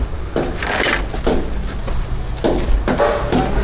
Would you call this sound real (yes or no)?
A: yes